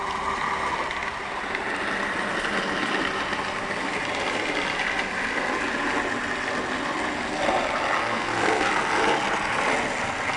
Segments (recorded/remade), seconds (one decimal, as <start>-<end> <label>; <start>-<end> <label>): 0.0-8.0 recorded; 8.0-8.7 remade; 8.7-10.4 recorded